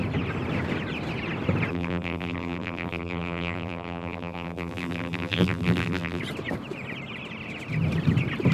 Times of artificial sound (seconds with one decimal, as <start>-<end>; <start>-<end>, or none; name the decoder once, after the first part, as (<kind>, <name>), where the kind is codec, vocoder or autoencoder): 1.7-6.2 (vocoder, BigVGAN v2)